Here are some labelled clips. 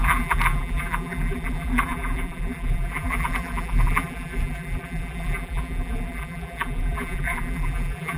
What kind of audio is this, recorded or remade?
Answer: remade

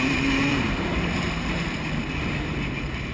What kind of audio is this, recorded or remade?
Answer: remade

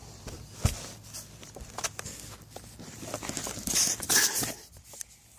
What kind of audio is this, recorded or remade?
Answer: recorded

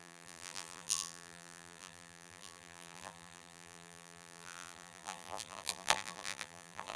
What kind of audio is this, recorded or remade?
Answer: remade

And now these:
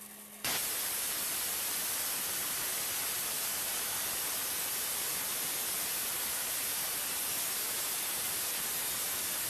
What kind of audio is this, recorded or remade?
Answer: recorded